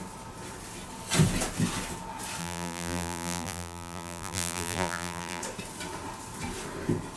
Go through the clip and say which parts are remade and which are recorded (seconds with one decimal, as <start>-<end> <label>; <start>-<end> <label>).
0.0-2.4 recorded; 2.4-5.4 remade; 5.4-7.2 recorded